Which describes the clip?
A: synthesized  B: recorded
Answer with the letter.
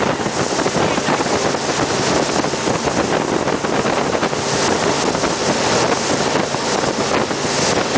B